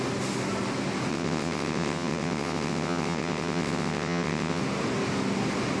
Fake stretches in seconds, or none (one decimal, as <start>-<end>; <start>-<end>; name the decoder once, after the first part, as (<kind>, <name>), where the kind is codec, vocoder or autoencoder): 1.1-4.6 (vocoder, WaveNeXt)